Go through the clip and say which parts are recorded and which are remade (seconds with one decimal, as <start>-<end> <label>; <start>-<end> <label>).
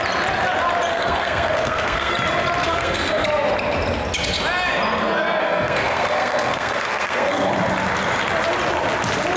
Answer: 0.0-0.9 recorded; 0.9-2.1 remade; 2.1-2.6 recorded; 2.6-3.2 remade; 3.2-5.4 recorded; 5.4-7.5 remade; 7.5-9.4 recorded